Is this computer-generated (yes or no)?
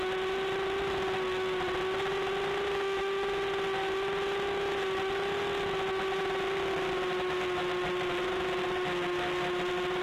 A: no